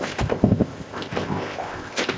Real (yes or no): no